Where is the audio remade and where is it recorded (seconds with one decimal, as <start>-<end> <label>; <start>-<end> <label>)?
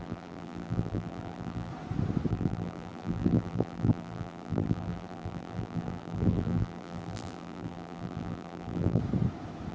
0.0-1.7 remade; 1.7-2.3 recorded; 2.3-9.0 remade; 9.0-9.7 recorded